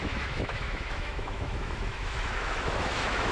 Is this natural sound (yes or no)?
no